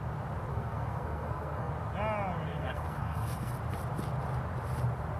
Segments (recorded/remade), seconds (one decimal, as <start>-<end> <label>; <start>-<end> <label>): 0.0-0.5 recorded; 0.5-1.7 remade; 1.7-2.5 recorded; 2.5-3.5 remade; 3.5-5.2 recorded